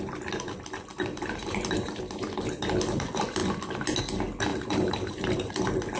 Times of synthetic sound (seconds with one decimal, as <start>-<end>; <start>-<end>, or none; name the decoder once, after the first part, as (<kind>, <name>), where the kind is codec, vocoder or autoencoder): 0.9-2.0 (vocoder, BigVGAN v2); 4.5-5.5